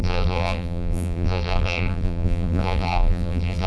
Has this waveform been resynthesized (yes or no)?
yes